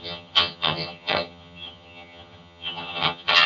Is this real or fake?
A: fake